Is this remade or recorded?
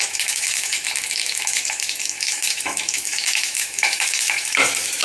remade